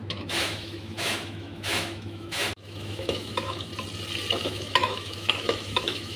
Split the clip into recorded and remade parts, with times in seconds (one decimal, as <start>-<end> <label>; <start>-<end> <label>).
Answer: 0.0-3.7 remade; 3.7-4.4 recorded; 4.4-6.2 remade